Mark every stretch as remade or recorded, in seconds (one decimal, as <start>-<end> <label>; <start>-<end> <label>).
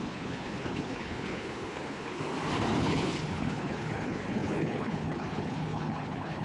0.0-2.2 remade; 2.2-2.8 recorded; 2.8-6.4 remade